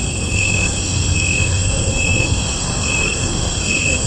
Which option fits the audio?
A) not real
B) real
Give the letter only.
A